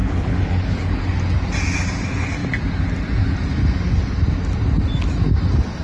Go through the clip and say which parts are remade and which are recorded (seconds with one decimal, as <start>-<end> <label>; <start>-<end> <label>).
0.0-1.0 remade; 1.0-5.8 recorded